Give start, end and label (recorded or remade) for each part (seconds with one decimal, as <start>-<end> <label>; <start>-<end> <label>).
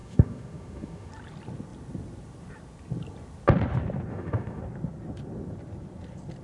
0.0-1.1 remade; 1.1-4.1 recorded; 4.1-4.6 remade; 4.6-6.4 recorded